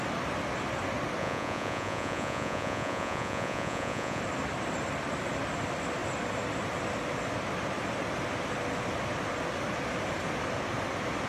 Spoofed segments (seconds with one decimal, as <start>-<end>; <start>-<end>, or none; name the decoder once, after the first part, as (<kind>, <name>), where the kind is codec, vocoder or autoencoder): 1.2-4.2 (vocoder, Vocos)